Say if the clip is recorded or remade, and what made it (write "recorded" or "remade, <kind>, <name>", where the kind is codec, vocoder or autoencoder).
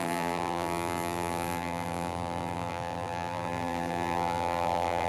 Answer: remade, vocoder, BigVGAN v2